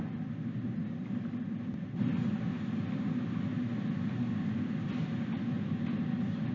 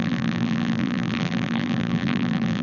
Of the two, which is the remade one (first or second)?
second